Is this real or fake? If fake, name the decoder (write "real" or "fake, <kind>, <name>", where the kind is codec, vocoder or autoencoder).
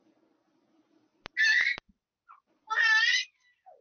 real